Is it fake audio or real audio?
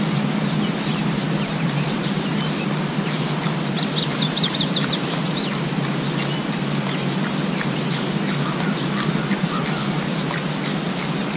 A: real